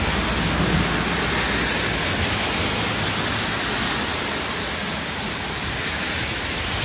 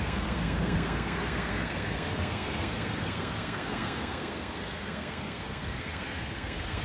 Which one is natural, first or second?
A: first